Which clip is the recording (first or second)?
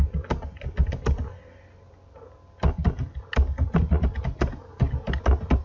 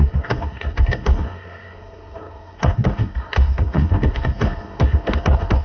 first